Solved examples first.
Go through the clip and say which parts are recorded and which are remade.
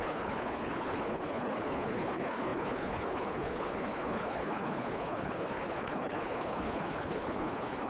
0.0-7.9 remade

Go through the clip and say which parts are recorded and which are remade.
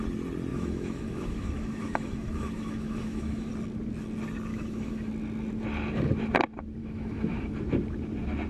0.0-0.5 recorded; 0.5-3.5 remade; 3.5-4.5 recorded; 4.5-5.1 remade; 5.1-6.8 recorded; 6.8-7.5 remade; 7.5-8.5 recorded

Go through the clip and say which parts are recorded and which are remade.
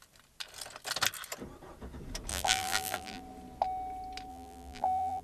0.0-2.3 recorded; 2.3-3.2 remade; 3.2-4.3 recorded; 4.3-5.2 remade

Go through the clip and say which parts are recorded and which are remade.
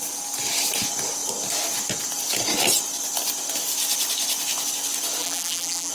0.0-5.2 recorded; 5.2-5.9 remade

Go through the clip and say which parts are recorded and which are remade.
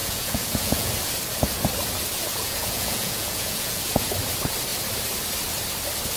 0.0-0.9 remade; 0.9-2.3 recorded; 2.3-4.1 remade; 4.1-6.2 recorded